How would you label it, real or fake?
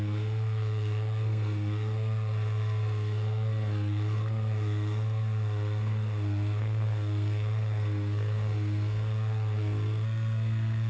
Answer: fake